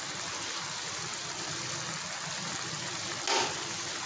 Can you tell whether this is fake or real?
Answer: real